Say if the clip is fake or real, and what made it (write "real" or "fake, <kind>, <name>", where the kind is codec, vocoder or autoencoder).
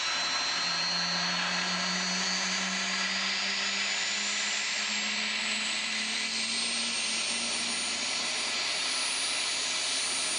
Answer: real